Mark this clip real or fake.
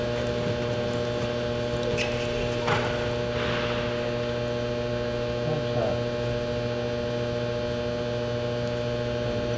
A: real